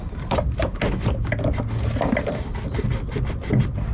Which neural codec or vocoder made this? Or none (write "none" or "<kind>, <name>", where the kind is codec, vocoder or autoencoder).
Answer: none